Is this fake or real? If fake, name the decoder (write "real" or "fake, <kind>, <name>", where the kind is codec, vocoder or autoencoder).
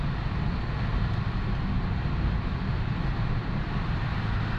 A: real